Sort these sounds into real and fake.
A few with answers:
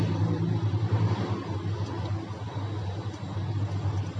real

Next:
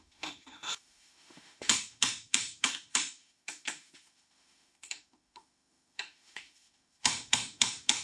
fake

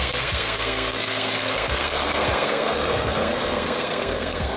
fake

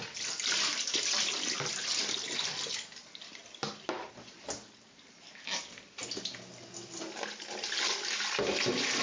real